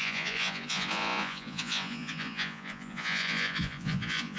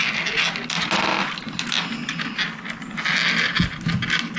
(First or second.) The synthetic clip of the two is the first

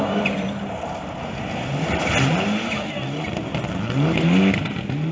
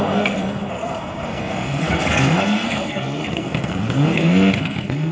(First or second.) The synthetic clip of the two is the second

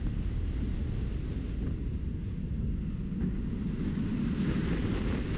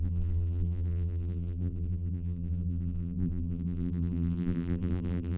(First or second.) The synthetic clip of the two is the second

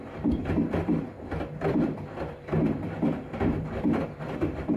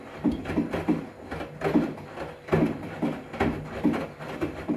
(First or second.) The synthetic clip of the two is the first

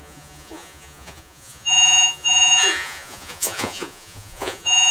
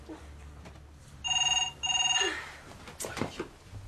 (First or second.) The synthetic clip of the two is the first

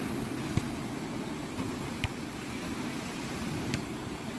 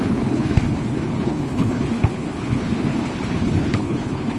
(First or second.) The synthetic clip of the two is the second